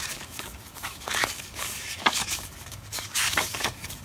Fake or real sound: fake